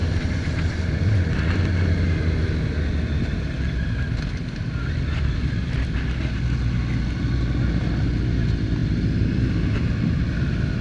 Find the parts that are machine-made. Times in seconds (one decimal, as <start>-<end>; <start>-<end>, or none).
none